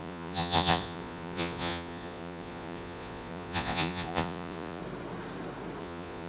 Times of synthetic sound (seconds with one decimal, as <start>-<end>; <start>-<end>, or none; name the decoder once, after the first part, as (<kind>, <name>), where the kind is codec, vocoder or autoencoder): 0.0-4.8 (vocoder, Vocos); 5.8-6.3

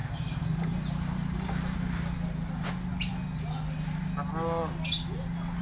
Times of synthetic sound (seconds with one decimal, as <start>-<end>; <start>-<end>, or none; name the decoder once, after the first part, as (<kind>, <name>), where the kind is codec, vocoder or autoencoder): 0.0-2.7 (vocoder, BigVGAN v2)

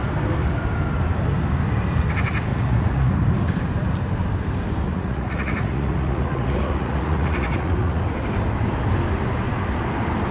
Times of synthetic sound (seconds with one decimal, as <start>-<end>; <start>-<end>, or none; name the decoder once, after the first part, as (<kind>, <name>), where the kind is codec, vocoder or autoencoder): 2.5-3.1 (vocoder, Vocos); 4.9-8.0

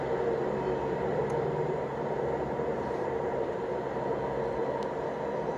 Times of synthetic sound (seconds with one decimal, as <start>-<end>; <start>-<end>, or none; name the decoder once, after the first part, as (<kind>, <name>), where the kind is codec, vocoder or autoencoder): 0.8-3.7 (vocoder, BigVGAN v2)

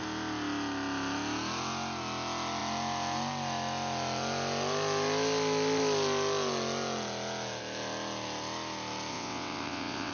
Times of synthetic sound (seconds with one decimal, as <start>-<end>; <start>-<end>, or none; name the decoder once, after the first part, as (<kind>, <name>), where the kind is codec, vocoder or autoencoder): 9.1-10.1 (vocoder, WaveNeXt)

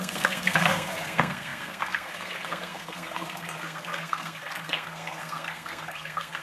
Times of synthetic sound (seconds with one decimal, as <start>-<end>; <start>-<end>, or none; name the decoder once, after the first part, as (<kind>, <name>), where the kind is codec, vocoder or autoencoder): 0.0-6.4 (codec, SNAC)

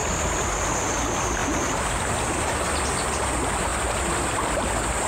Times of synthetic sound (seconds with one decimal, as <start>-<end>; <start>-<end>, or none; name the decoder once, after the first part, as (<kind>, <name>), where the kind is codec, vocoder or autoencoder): none